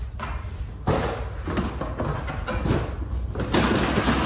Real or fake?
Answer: real